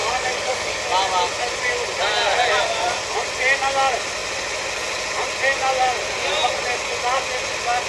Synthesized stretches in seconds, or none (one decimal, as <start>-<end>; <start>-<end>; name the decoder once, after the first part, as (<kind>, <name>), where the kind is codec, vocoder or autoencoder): 0.0-0.8 (codec, DAC)